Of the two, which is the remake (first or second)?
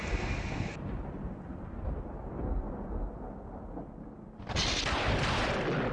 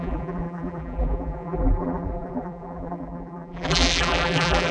second